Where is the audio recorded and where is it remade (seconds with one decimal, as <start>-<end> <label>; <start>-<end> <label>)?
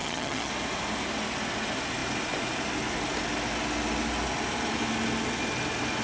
0.0-0.5 remade; 0.5-6.0 recorded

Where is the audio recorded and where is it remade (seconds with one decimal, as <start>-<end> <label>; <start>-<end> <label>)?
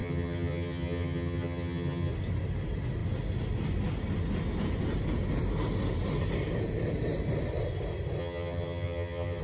0.0-2.1 remade; 2.1-8.2 recorded; 8.2-9.4 remade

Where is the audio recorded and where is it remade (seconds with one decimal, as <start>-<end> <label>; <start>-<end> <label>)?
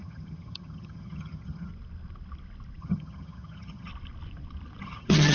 0.0-1.7 remade; 1.7-2.8 recorded; 2.8-3.9 remade; 3.9-4.8 recorded; 4.8-5.3 remade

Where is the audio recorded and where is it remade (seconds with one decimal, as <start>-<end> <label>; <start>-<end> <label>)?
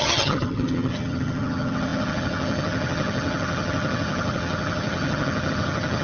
0.0-6.0 remade